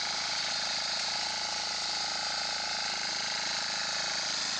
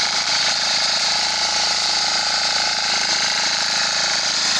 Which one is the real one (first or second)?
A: first